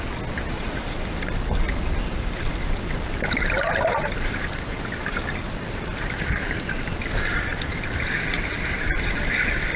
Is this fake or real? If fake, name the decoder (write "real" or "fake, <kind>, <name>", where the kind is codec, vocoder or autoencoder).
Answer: real